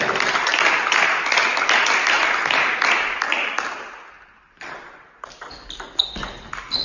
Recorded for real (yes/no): yes